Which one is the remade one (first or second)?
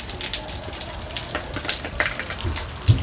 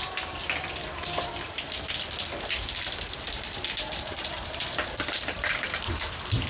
second